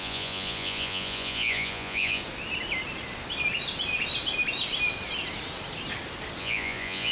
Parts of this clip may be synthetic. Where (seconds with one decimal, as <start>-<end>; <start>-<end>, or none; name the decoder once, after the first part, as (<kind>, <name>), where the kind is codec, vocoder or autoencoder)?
0.0-2.2 (vocoder, Vocos); 6.4-7.1